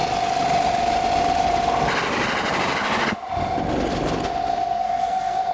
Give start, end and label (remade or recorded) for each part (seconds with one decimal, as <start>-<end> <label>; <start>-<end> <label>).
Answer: 0.0-4.5 recorded; 4.5-5.5 remade